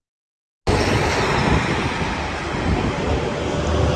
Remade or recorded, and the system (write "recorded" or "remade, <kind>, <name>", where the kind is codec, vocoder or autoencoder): recorded